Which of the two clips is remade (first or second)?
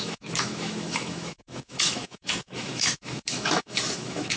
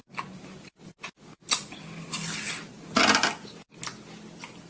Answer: first